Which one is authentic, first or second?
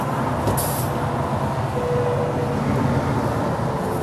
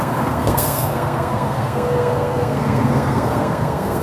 first